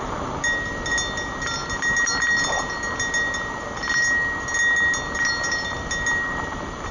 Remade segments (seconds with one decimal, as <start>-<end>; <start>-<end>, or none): none